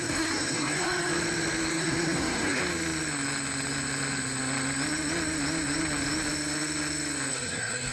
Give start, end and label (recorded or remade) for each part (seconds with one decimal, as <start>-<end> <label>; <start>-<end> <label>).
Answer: 0.0-1.1 remade; 1.1-1.7 recorded; 1.7-2.6 remade; 2.6-7.3 recorded; 7.3-7.9 remade